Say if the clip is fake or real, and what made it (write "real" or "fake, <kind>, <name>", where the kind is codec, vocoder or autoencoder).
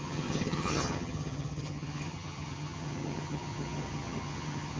fake, vocoder, HiFi-GAN